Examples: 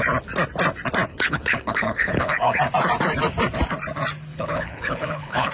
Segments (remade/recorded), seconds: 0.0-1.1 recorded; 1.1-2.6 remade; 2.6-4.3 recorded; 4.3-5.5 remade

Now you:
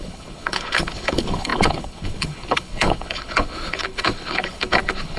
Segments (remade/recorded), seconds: 0.0-5.2 remade

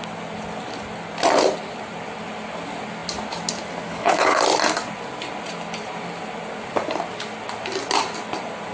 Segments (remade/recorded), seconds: 0.0-3.9 recorded; 3.9-4.4 remade; 4.4-8.7 recorded

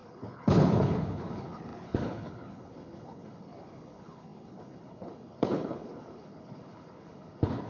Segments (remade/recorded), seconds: 0.0-7.7 remade